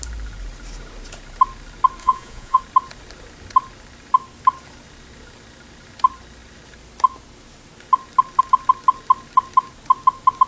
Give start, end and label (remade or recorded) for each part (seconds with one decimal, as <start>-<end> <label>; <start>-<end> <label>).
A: 0.0-2.0 recorded; 2.0-2.6 remade; 2.6-10.5 recorded